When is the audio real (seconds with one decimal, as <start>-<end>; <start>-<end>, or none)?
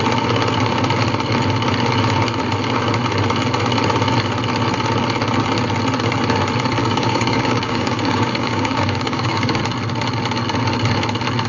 0.0-6.8; 9.6-11.5